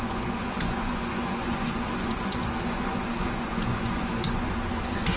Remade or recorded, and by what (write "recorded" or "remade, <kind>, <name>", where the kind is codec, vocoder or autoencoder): remade, vocoder, Vocos